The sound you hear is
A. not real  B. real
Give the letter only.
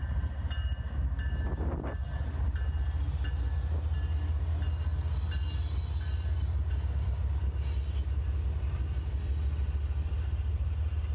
B